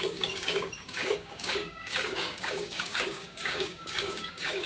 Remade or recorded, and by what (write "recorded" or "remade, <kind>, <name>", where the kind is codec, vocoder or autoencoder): remade, codec, DAC